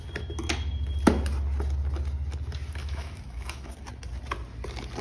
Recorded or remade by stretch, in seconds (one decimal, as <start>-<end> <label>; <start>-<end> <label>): 0.0-2.8 recorded; 2.8-3.7 remade; 3.7-5.0 recorded